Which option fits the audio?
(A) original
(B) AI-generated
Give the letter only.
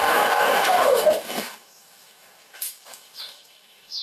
B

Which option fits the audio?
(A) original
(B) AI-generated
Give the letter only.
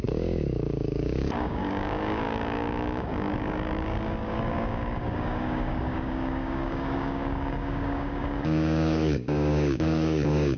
B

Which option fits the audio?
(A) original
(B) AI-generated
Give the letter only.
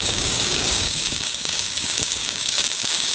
B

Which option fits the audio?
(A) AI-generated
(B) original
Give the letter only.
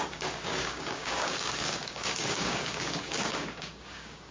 A